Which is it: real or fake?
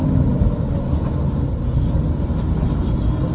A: real